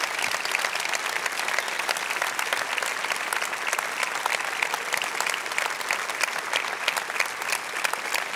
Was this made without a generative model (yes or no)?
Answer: yes